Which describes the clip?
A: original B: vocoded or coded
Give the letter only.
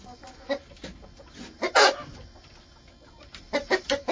A